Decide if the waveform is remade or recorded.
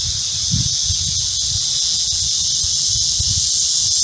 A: recorded